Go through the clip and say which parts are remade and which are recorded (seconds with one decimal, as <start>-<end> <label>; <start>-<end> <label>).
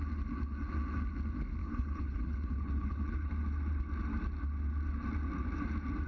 0.0-1.6 recorded; 1.6-3.3 remade; 3.3-6.1 recorded